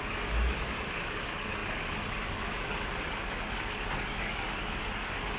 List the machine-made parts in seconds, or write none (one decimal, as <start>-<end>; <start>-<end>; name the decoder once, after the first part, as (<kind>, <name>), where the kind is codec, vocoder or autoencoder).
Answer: 0.0-5.4 (codec, DAC)